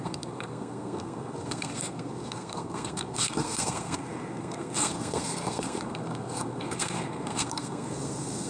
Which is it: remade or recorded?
remade